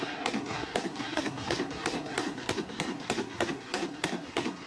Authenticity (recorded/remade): remade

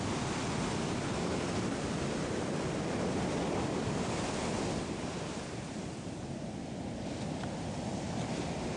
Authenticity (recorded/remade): recorded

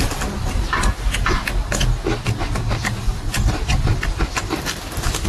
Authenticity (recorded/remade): recorded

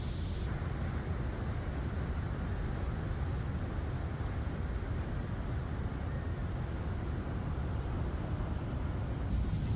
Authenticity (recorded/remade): recorded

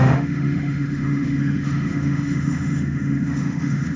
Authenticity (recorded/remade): remade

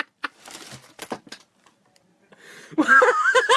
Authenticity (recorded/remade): recorded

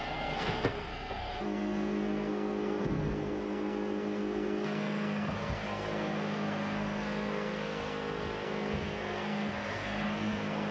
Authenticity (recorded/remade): remade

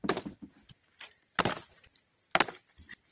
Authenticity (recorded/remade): recorded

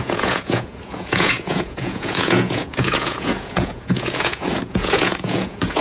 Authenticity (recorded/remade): remade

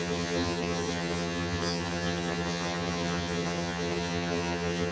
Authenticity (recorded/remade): remade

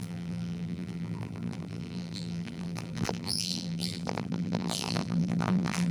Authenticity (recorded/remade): remade